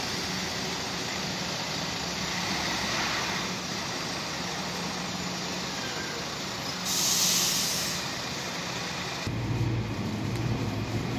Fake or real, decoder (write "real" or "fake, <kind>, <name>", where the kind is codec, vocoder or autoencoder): real